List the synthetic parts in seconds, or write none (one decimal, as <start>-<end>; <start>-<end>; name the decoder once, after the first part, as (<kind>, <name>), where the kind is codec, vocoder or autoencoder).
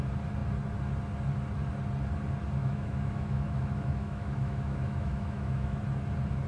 2.6-5.8 (autoencoder, DAC-VAE)